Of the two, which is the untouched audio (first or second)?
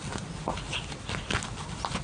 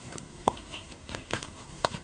first